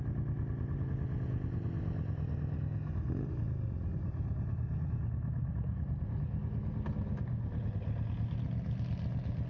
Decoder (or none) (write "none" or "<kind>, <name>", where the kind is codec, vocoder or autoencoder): none